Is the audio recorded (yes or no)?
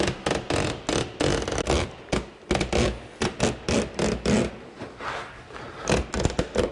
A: yes